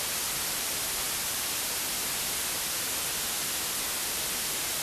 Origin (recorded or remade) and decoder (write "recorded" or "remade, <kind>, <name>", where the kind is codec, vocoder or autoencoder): recorded